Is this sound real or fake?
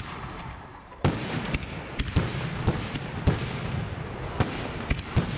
real